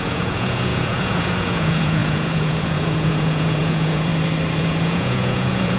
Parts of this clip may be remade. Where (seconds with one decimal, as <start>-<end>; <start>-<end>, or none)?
0.0-4.1; 4.6-5.8

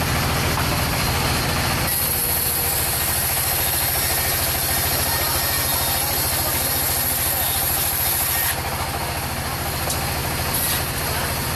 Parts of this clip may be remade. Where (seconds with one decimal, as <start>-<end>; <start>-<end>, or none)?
none

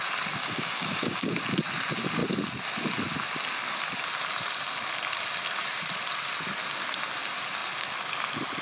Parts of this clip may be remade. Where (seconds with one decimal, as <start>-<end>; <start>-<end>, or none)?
0.4-1.3